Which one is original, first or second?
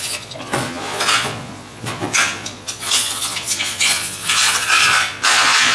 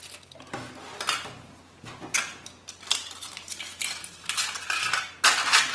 second